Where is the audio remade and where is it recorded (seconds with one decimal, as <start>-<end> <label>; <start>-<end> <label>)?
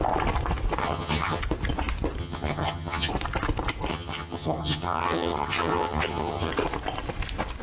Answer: 0.0-0.8 recorded; 0.8-1.4 remade; 1.4-2.2 recorded; 2.2-3.1 remade; 3.1-3.9 recorded; 3.9-6.5 remade; 6.5-7.6 recorded